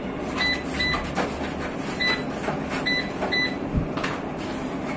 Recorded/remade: recorded